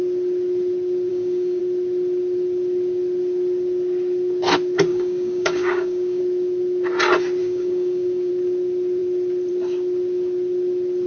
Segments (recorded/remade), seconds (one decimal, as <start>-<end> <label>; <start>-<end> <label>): 0.0-1.1 recorded; 1.1-1.6 remade; 1.6-4.9 recorded; 4.9-6.2 remade; 6.2-7.4 recorded; 7.4-8.3 remade; 8.3-11.1 recorded